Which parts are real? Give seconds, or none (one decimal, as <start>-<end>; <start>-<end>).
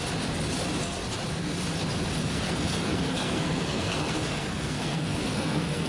0.0-2.2